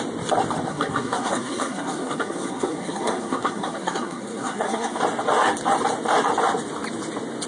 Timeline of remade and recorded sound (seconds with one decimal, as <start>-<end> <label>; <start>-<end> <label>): 0.0-0.7 recorded; 0.7-5.0 remade; 5.0-7.5 recorded